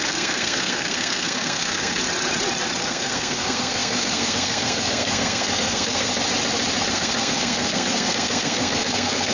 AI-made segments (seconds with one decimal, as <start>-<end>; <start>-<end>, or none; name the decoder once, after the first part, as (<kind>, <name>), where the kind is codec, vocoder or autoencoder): 0.0-2.0 (codec, SNAC); 2.8-6.1; 6.9-9.3